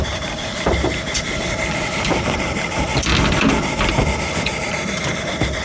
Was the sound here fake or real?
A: fake